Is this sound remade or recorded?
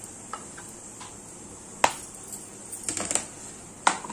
recorded